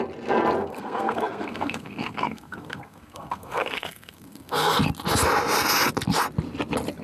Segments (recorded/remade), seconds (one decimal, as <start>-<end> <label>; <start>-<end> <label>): 0.0-0.6 recorded; 0.6-4.8 remade; 4.8-7.0 recorded

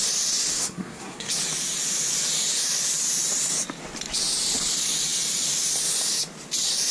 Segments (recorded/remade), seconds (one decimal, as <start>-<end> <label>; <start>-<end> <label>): 0.0-0.5 recorded; 0.5-1.3 remade; 1.3-6.9 recorded

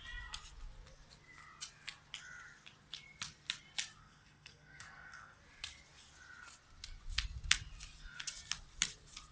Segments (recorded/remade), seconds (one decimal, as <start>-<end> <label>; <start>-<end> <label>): 0.0-4.0 recorded; 4.0-5.4 remade; 5.4-9.3 recorded

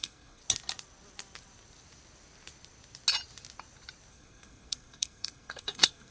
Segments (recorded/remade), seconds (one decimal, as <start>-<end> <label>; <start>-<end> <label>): 0.0-0.4 remade; 0.4-4.1 recorded; 4.1-6.1 remade

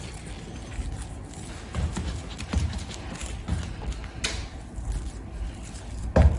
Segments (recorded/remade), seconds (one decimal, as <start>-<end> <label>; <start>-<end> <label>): 0.0-6.4 recorded

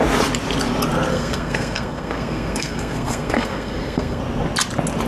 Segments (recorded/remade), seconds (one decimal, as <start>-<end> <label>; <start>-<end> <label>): 0.0-1.1 recorded; 1.1-4.2 remade; 4.2-5.1 recorded

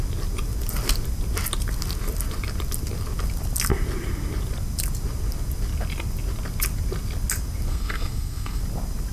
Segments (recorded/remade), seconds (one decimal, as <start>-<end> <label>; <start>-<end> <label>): 0.0-7.7 recorded; 7.7-8.6 remade; 8.6-9.1 recorded

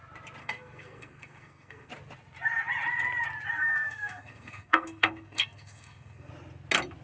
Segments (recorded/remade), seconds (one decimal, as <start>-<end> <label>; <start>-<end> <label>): 0.0-0.4 recorded; 0.4-1.9 remade; 1.9-3.6 recorded; 3.6-6.3 remade; 6.3-7.0 recorded